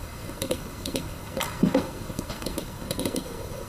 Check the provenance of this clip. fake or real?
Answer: fake